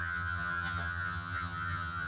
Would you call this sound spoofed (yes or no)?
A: yes